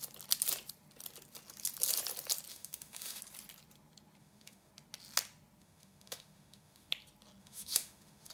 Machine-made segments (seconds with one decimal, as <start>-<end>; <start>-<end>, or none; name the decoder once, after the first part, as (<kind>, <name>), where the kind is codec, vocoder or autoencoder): 2.5-3.2 (autoencoder, DAC-VAE); 4.2-4.7; 5.6-6.9; 7.4-8.3